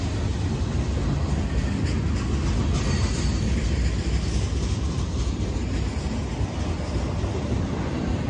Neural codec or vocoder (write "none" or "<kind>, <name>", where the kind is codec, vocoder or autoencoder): none